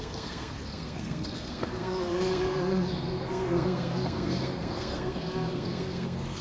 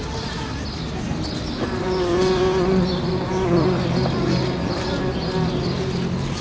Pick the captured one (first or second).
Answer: second